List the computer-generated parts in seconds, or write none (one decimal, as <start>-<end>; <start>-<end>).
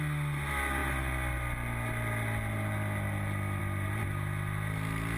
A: none